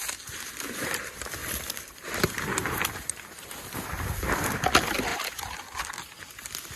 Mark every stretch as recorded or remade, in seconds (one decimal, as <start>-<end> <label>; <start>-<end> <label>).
0.0-1.4 recorded; 1.4-3.5 remade; 3.5-5.1 recorded; 5.1-6.2 remade; 6.2-6.8 recorded